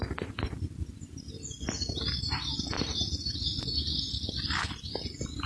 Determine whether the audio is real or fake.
real